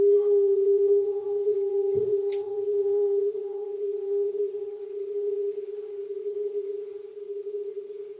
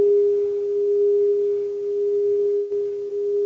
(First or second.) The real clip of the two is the second